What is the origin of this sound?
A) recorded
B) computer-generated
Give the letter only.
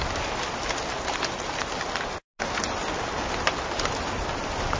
A